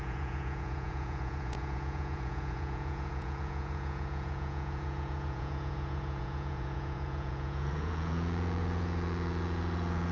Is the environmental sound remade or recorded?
remade